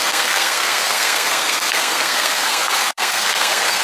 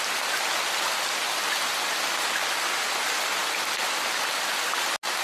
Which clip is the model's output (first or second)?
first